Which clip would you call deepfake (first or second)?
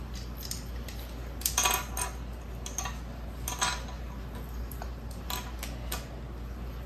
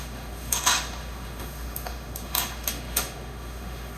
second